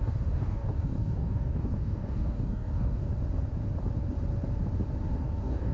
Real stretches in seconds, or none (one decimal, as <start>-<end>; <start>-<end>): 3.1-5.2